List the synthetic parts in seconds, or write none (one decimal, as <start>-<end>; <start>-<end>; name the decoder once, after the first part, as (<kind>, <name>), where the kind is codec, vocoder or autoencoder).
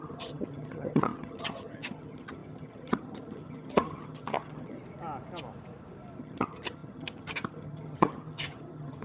0.0-4.8 (vocoder, HiFi-GAN); 6.2-9.0